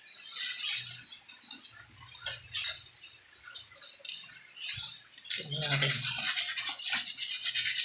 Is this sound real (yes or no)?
yes